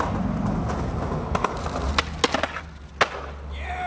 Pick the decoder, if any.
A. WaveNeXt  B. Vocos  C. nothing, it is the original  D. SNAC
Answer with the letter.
C